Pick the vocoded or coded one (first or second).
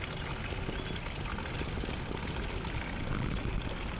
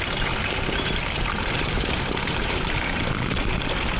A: second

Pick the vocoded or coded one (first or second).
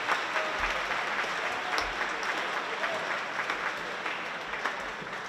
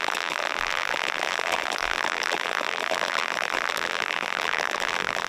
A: second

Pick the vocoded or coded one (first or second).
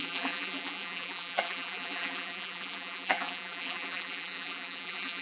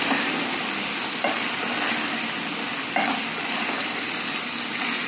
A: first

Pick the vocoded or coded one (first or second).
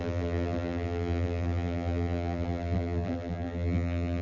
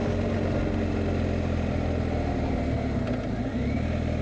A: first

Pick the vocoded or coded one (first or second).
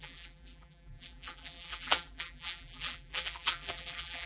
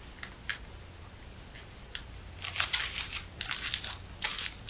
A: first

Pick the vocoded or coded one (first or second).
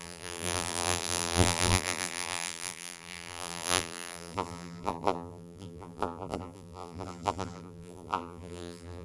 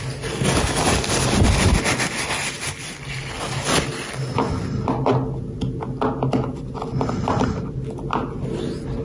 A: first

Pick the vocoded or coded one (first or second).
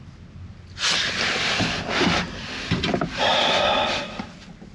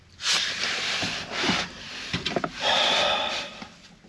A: second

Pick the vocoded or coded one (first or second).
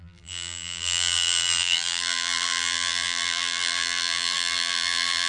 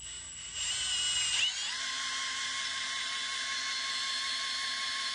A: first